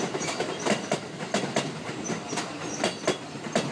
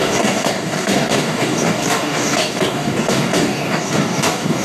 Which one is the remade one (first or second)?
second